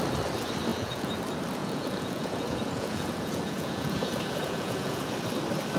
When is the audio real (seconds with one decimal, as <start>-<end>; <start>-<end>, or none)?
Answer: 0.0-0.7; 1.2-1.6; 5.1-5.8